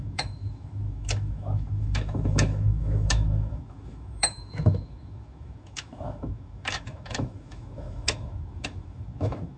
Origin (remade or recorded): remade